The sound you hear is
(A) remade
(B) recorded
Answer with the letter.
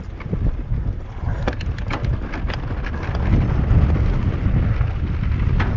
B